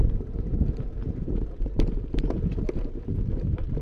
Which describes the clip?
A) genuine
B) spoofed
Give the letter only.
B